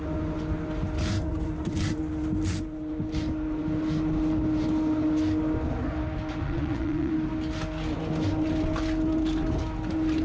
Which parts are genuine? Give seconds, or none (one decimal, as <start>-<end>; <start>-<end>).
0.0-6.4; 7.1-10.2